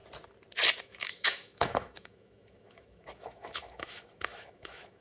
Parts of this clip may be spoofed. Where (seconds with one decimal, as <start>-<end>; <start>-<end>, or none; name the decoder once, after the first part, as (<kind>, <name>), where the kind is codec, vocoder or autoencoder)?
0.8-5.0 (autoencoder, DAC-VAE)